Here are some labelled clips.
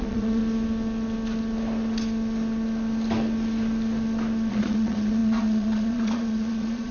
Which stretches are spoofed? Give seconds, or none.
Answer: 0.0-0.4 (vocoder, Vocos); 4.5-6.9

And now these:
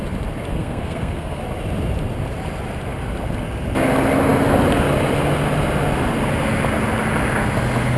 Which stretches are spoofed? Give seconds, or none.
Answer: 0.5-1.4 (codec, SNAC)

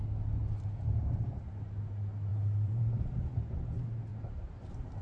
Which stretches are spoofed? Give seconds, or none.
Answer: 0.4-1.0 (vocoder, BigVGAN v2); 2.3-3.0; 4.1-5.0

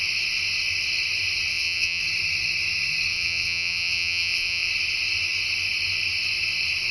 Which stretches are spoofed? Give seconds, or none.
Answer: 1.5-2.0 (vocoder, WaveNeXt); 3.1-4.7

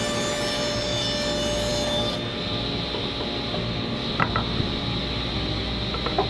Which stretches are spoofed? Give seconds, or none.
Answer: none

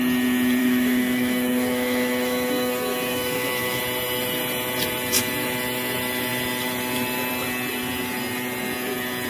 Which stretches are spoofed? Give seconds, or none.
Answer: 0.6-3.8 (autoencoder, DAC-VAE)

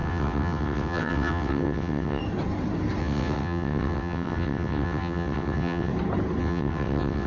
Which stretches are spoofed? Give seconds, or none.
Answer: 0.0-2.2 (vocoder, WaveNeXt); 3.0-5.9; 6.4-7.3

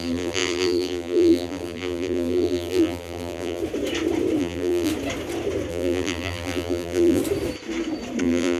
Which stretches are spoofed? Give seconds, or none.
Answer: 0.0-3.6 (vocoder, BigVGAN v2); 4.4-4.9; 5.7-7.2; 8.2-8.6